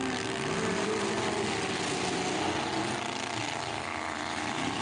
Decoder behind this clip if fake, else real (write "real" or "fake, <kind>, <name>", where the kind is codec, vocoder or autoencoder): real